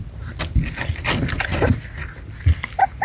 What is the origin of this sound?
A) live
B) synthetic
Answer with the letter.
A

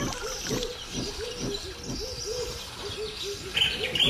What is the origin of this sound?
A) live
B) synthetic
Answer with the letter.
A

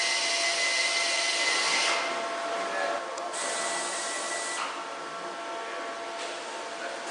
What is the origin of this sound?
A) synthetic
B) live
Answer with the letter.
B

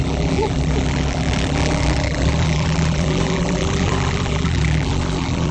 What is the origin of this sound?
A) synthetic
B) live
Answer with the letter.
A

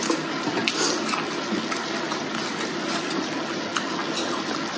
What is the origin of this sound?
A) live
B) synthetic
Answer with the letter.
A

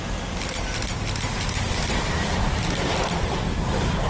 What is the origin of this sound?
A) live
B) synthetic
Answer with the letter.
A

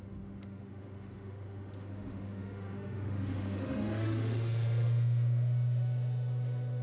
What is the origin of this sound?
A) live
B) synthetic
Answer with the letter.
B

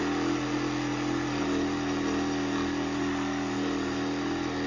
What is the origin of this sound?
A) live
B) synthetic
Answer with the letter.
A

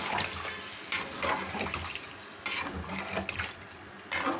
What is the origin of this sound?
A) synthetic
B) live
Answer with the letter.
B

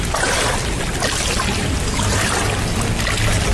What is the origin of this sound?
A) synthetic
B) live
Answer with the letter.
B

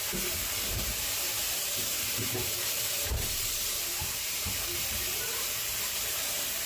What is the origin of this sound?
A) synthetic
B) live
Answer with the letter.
A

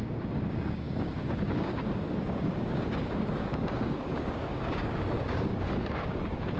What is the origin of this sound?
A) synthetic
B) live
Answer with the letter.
A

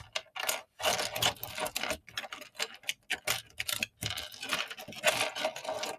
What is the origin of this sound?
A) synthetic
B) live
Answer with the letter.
B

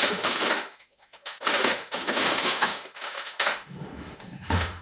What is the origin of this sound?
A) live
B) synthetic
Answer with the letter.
B